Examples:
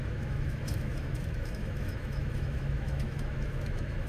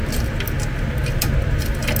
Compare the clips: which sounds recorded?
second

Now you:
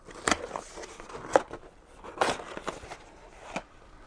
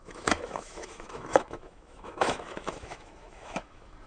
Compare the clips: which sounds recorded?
first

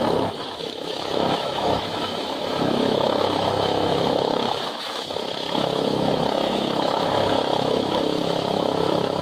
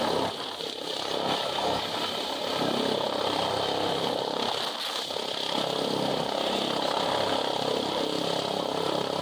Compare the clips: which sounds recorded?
second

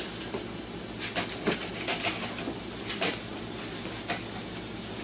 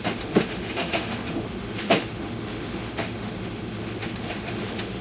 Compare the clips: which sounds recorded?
first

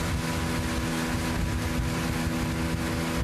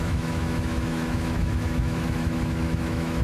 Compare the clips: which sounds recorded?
first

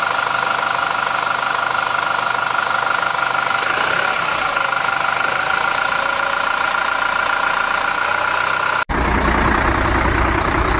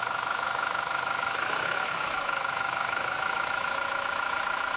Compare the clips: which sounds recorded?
first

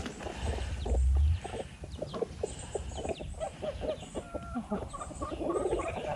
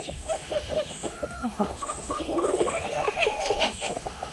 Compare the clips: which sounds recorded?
first